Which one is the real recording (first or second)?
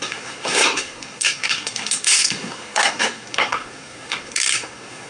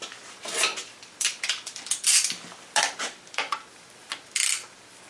second